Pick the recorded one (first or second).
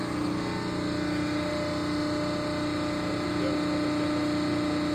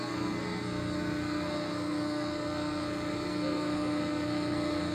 first